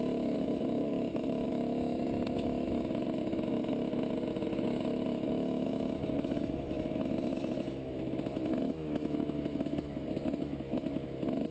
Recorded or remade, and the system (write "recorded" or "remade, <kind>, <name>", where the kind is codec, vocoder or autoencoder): remade, autoencoder, DAC-VAE